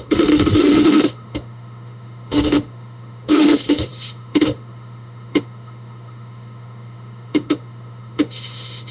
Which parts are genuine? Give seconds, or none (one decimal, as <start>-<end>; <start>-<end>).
none